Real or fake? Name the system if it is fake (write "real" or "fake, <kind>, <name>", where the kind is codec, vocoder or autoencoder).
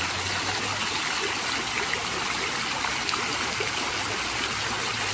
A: real